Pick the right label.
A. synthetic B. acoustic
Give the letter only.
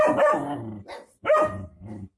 B